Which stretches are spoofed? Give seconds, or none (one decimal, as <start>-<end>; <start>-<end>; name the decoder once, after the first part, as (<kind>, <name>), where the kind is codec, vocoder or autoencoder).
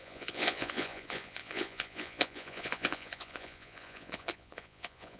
0.0-5.2 (vocoder, Vocos)